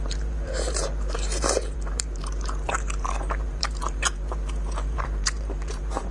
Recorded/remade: remade